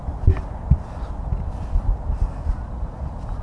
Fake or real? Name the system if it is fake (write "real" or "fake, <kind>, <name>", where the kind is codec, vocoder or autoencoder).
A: real